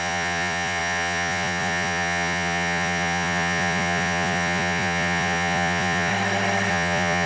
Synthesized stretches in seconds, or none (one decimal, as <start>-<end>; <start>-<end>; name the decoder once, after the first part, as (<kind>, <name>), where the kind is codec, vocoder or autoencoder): 0.0-6.1 (vocoder, Vocos); 6.7-7.3